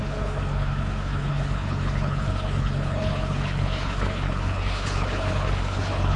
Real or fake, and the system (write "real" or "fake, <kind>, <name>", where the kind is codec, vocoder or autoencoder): fake, codec, HILCodec